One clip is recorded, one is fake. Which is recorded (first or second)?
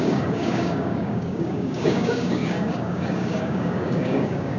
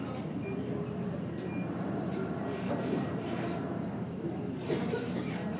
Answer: second